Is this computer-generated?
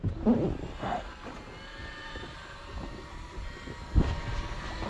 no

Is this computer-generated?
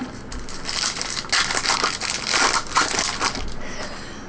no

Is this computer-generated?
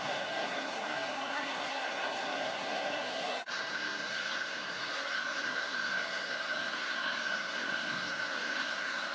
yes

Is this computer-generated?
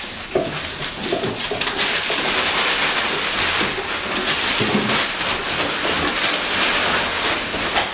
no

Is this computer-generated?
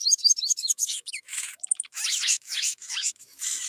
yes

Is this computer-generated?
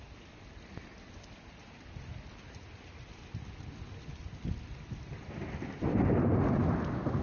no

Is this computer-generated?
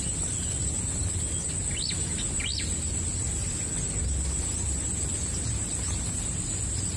no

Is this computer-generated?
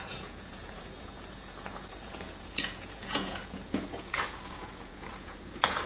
yes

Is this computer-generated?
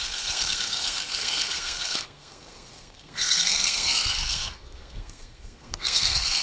yes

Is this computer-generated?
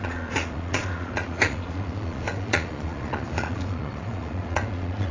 yes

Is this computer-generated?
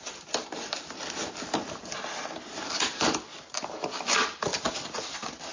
no